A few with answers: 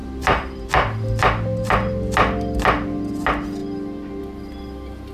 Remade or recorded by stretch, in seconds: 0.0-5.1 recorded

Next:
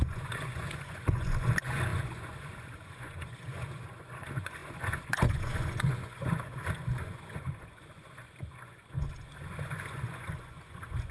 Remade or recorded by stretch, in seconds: 0.0-11.1 remade

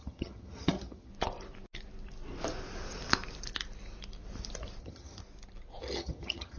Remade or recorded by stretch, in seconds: 0.0-1.1 remade; 1.1-4.8 recorded; 4.8-5.2 remade; 5.2-5.8 recorded; 5.8-6.6 remade

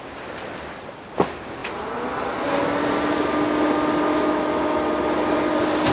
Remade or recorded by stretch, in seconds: 0.0-5.9 recorded

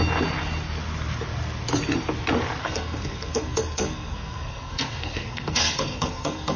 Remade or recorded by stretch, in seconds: 0.0-2.6 recorded; 2.6-6.6 remade

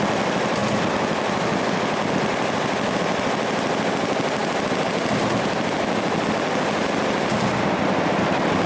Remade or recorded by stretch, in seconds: 0.0-8.7 recorded

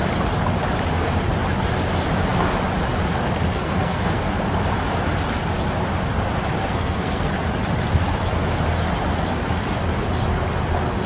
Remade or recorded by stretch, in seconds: 0.0-3.5 recorded; 3.5-4.2 remade; 4.2-6.6 recorded; 6.6-7.3 remade; 7.3-11.1 recorded